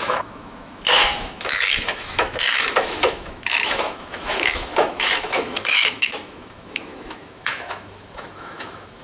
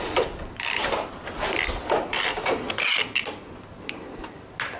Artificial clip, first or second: first